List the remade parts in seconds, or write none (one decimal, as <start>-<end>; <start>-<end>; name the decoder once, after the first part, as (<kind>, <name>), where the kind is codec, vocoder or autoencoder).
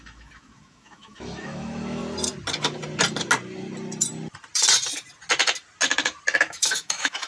0.0-2.0 (autoencoder, DAC-VAE); 6.4-7.3